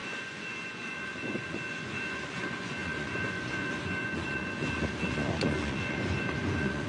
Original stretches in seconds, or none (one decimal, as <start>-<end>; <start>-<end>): none